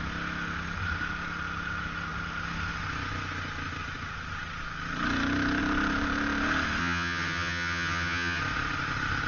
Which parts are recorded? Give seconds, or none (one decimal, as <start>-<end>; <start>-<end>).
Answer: 0.0-6.8; 8.4-9.3